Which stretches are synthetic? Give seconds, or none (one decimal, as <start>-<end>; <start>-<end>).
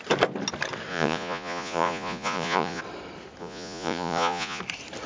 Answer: 0.9-2.8; 3.4-4.6